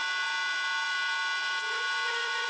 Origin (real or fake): real